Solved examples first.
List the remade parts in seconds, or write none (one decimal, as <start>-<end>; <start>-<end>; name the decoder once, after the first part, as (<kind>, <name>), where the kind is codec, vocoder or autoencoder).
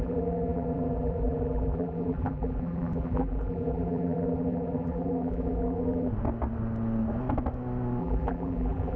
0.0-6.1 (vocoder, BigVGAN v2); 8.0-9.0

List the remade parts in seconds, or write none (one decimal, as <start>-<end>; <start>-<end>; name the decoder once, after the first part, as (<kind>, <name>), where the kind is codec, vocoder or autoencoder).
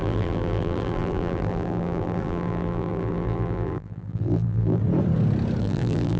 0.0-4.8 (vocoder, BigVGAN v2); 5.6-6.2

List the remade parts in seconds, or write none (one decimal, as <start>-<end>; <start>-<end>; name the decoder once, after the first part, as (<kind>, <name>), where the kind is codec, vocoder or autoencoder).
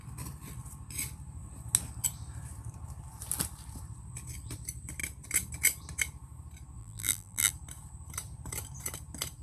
6.8-7.5 (vocoder, BigVGAN v2)